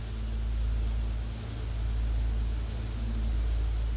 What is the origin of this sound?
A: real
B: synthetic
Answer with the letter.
A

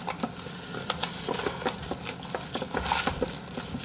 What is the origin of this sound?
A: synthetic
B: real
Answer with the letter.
B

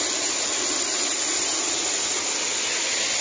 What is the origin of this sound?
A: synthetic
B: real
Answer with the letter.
B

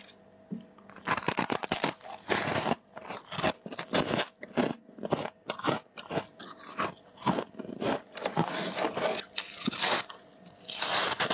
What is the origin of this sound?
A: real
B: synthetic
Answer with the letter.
A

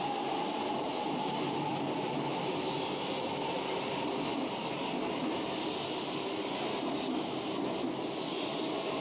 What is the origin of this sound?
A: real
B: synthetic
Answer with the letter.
A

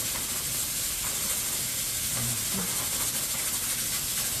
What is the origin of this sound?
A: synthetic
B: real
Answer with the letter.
B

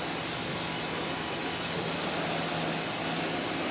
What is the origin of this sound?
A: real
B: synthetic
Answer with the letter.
A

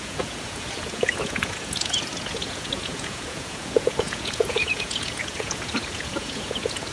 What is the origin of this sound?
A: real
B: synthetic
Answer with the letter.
B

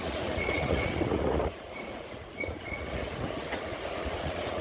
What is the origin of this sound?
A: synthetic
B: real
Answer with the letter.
A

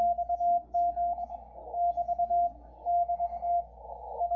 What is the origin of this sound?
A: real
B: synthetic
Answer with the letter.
A